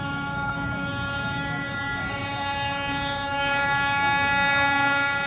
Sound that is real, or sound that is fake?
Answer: fake